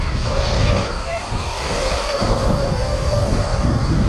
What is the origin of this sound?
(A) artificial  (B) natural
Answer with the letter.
A